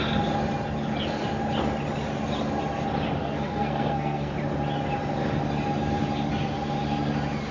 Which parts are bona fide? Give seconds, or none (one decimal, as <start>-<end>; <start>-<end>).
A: 0.0-3.2; 4.3-7.5